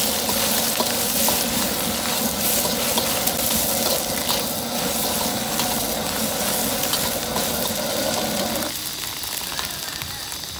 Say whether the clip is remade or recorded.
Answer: recorded